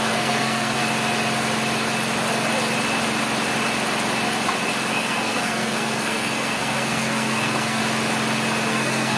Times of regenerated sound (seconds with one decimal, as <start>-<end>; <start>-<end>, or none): 0.0-0.8; 4.9-7.8; 8.7-9.2